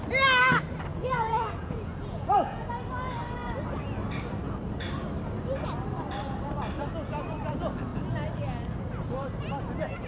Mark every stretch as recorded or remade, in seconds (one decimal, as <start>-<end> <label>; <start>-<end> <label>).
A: 0.0-0.9 recorded; 0.9-2.7 remade; 2.7-10.1 recorded